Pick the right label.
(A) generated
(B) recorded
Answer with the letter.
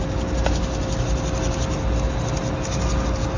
B